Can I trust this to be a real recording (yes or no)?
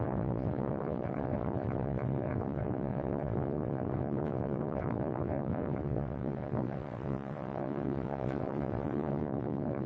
no